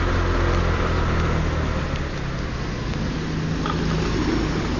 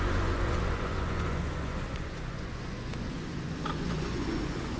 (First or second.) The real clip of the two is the first